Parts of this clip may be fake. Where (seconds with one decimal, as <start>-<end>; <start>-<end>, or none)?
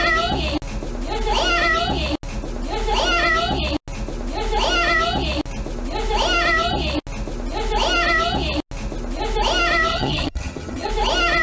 9.9-10.9